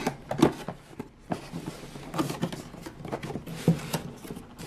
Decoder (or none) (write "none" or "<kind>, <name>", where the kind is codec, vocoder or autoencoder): none